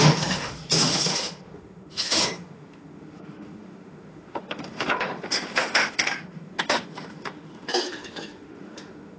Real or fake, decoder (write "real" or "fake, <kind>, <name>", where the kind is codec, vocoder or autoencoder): fake, autoencoder, DAC-VAE